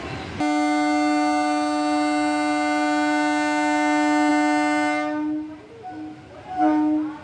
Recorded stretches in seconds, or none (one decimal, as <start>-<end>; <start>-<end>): 0.0-7.2